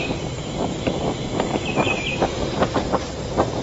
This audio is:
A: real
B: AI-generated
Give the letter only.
B